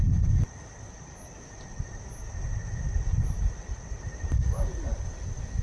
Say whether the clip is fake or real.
real